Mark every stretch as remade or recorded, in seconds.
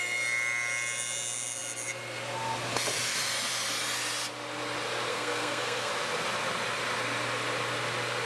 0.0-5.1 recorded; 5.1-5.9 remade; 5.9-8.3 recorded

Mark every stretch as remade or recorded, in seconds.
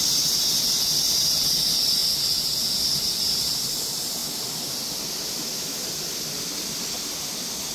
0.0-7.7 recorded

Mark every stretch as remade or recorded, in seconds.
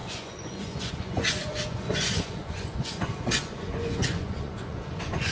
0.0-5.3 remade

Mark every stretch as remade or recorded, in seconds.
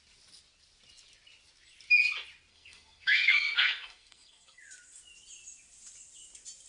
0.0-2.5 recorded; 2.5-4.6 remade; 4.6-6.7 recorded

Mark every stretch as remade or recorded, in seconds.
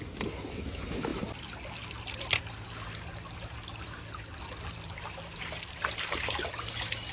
0.0-7.1 recorded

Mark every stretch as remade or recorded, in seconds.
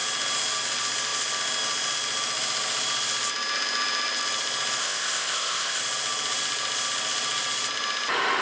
0.0-4.8 recorded; 4.8-5.8 remade; 5.8-8.4 recorded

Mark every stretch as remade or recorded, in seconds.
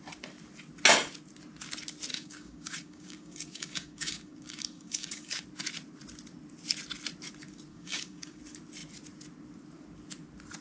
0.0-2.1 recorded; 2.1-5.4 remade; 5.4-7.7 recorded; 7.7-8.4 remade; 8.4-10.6 recorded